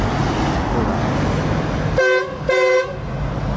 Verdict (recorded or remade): recorded